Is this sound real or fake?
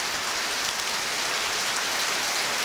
real